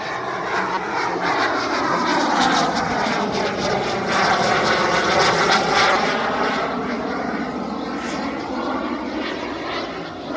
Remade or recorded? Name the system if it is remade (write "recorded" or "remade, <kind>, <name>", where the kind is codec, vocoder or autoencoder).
recorded